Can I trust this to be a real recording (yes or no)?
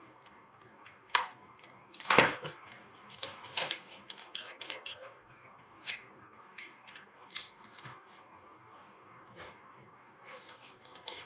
no